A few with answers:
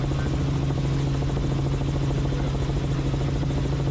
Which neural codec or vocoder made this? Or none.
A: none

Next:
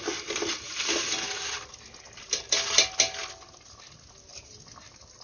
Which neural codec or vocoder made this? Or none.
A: none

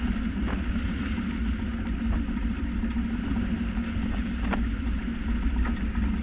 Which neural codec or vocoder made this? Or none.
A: none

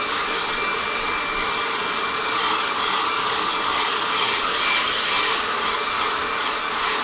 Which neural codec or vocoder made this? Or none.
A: codec, DAC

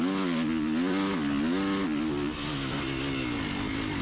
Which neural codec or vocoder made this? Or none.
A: none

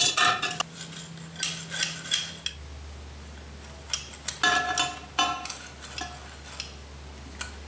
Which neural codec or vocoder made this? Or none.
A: none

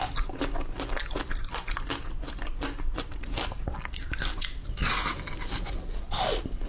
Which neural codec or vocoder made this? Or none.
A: none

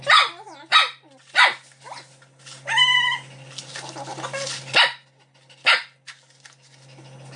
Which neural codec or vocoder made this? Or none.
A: none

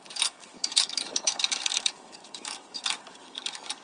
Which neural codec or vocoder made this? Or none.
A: codec, DAC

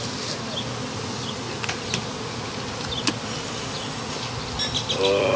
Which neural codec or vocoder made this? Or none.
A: none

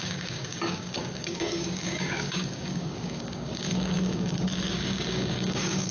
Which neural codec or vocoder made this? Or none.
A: codec, DAC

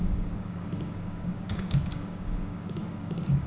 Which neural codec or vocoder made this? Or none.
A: codec, DAC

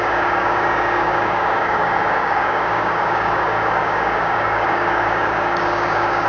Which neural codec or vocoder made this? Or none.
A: codec, DAC